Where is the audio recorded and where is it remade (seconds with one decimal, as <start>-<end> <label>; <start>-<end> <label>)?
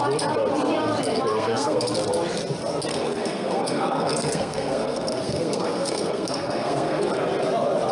0.0-1.3 recorded; 1.3-1.9 remade; 1.9-2.9 recorded; 2.9-7.0 remade; 7.0-7.9 recorded